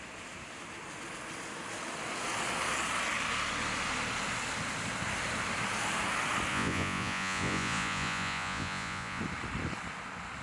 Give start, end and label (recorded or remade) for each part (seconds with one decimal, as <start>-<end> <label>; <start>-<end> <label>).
0.0-6.5 recorded; 6.5-9.2 remade; 9.2-10.4 recorded